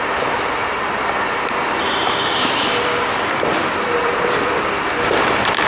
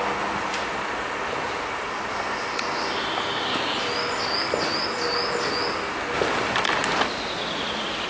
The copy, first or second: first